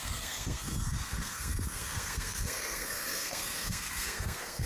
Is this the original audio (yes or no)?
no